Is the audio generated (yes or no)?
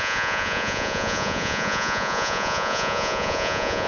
yes